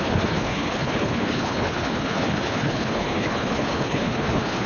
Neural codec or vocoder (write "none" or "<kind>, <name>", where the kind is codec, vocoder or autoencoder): codec, HILCodec